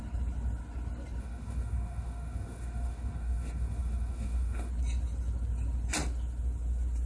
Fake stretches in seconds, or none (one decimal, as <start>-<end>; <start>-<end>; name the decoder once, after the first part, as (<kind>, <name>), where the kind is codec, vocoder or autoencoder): 1.2-4.7 (autoencoder, DAC-VAE)